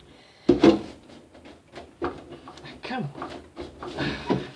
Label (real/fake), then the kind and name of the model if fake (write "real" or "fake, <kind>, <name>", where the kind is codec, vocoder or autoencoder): real